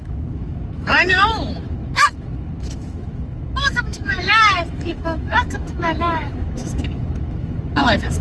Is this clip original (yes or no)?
no